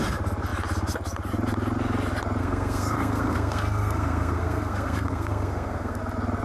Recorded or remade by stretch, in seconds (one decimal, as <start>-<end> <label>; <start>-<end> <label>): 0.0-2.4 recorded; 2.4-6.0 remade; 6.0-6.4 recorded